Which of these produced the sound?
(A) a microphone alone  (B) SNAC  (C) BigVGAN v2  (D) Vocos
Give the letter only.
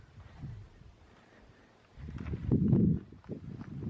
A